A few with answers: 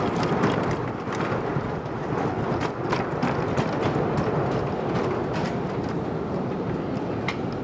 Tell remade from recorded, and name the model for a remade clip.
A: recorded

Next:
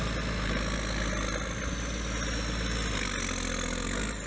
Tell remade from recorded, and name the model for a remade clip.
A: recorded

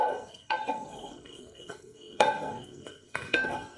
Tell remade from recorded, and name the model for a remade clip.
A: remade, codec, SNAC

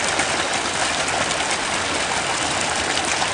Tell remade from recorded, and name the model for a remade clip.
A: recorded